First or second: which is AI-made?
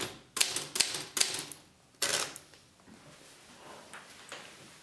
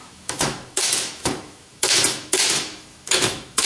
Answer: second